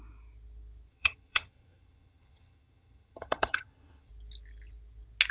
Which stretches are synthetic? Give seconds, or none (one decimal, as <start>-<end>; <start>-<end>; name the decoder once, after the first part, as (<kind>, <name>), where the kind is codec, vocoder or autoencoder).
0.9-4.1 (vocoder, HiFi-GAN)